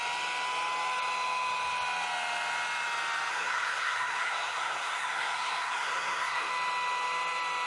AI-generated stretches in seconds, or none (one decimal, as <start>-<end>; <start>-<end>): 3.3-6.5